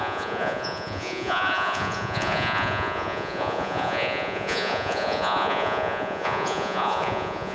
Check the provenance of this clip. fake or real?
fake